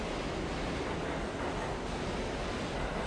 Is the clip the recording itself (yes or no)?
yes